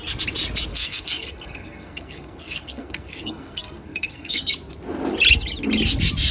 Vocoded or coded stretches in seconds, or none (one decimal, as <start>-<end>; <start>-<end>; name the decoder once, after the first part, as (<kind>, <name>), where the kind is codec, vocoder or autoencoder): 0.7-4.5 (codec, SNAC)